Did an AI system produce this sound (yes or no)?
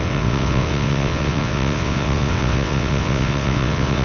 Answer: yes